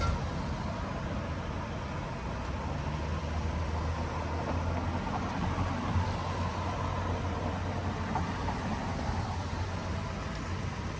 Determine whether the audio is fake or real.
real